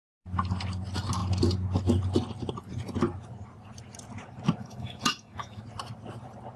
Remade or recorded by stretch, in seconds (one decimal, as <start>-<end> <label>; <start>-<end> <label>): 0.0-4.6 recorded; 4.6-5.6 remade; 5.6-6.6 recorded